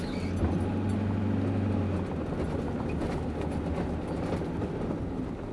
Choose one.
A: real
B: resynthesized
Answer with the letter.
A